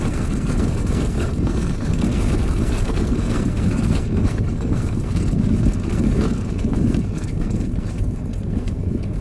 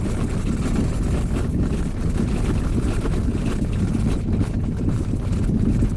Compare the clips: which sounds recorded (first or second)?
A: second